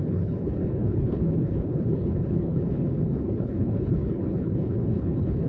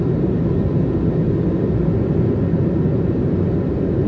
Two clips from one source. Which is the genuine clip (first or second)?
second